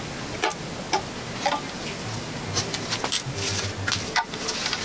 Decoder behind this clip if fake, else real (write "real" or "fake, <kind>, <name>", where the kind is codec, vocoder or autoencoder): real